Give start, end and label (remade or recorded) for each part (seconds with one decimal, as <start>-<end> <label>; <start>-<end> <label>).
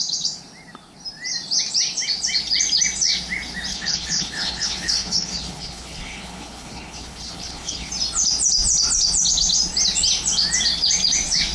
0.0-3.7 recorded; 3.7-7.9 remade; 7.9-11.5 recorded